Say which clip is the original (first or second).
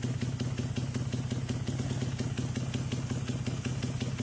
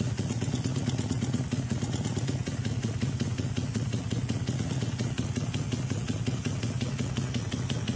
first